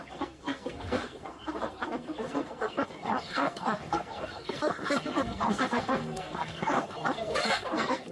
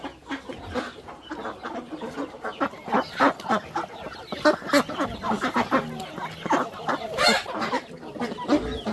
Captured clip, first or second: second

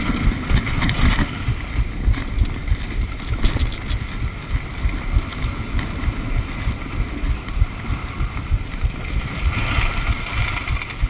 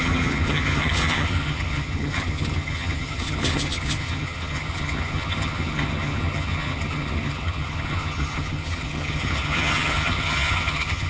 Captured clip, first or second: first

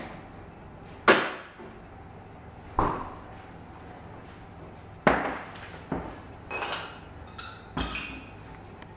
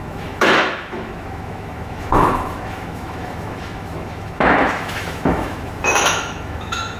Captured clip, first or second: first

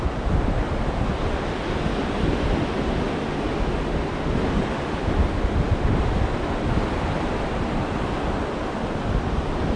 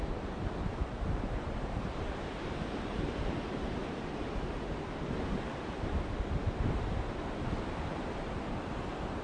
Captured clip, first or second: first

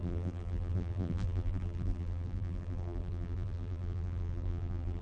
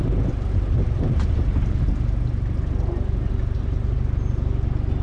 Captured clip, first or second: second